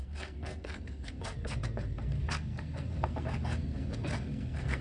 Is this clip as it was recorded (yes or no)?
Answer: no